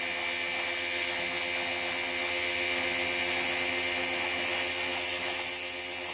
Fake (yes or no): no